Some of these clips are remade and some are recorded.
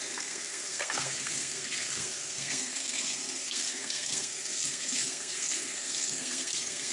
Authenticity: remade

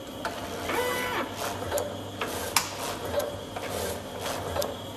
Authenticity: recorded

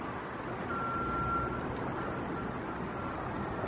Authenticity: recorded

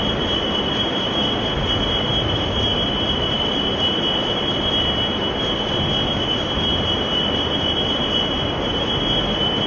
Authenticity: recorded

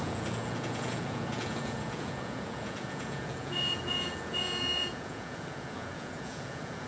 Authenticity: remade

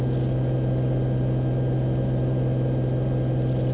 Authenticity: recorded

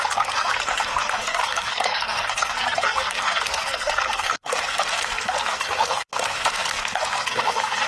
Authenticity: remade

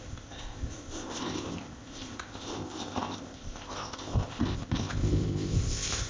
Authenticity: remade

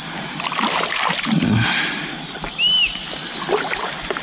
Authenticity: recorded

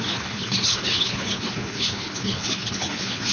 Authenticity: remade